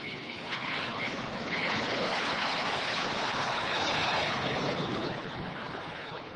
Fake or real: fake